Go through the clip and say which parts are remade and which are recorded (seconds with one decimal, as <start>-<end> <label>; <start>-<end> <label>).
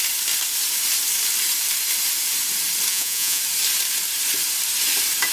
0.0-2.9 recorded; 2.9-3.4 remade; 3.4-5.3 recorded